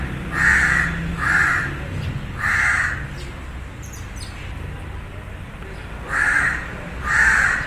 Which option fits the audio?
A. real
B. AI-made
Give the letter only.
A